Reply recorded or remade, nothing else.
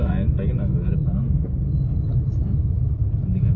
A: recorded